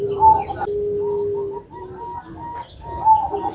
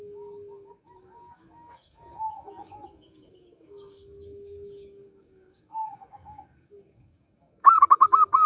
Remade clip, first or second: second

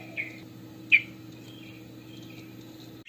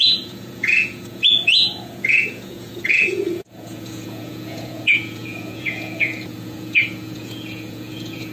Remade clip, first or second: second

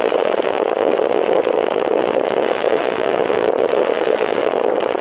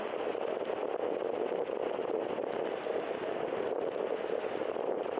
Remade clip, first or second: first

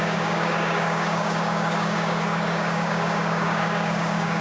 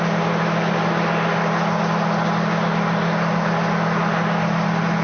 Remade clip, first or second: first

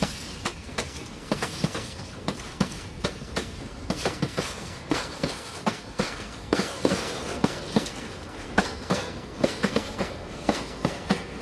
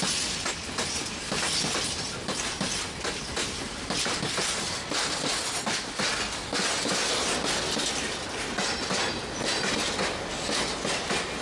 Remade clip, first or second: first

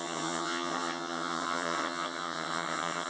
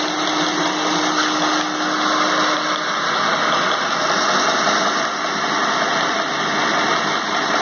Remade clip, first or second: first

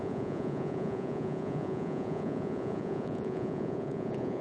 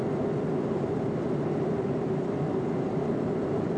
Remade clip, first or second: first